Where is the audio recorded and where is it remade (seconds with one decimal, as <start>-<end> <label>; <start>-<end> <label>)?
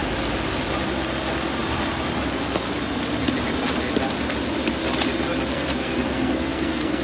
0.0-5.5 recorded; 5.5-7.0 remade